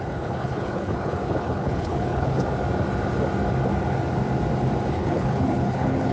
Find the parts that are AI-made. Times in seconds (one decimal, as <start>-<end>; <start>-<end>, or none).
0.0-2.4; 4.9-6.1